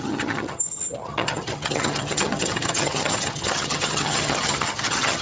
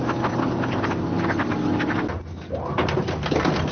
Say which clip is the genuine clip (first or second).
second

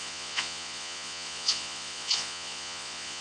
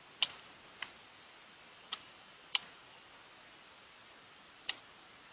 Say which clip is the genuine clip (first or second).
second